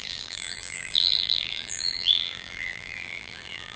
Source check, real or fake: fake